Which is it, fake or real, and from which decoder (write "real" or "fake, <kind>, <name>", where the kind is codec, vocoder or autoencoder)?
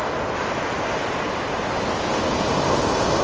real